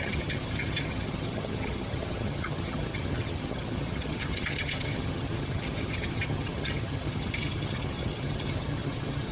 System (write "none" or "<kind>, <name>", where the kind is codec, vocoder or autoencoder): vocoder, HiFi-GAN